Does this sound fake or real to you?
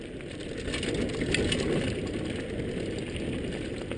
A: real